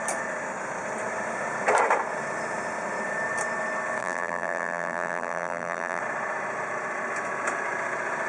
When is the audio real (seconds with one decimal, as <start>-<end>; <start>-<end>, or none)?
0.0-4.0; 6.0-8.3